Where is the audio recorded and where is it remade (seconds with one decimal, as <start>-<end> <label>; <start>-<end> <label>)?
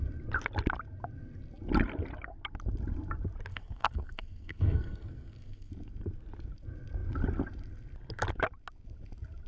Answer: 0.0-3.5 recorded; 3.5-5.7 remade; 5.7-9.5 recorded